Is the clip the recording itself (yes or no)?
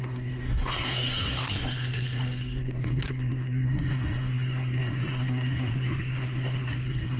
no